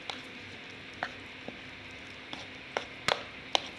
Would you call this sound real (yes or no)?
yes